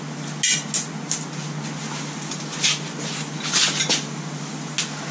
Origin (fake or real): real